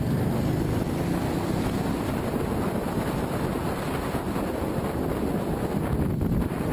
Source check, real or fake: real